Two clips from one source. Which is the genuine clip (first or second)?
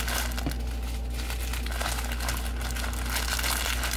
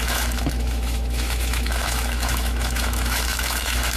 first